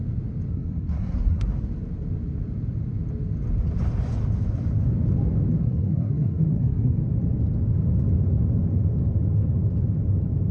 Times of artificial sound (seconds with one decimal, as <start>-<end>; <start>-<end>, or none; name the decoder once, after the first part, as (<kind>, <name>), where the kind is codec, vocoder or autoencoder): 0.5-1.5 (codec, SNAC); 5.6-7.0